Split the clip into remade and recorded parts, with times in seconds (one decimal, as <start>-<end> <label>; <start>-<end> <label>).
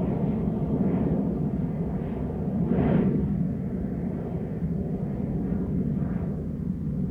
0.0-7.1 recorded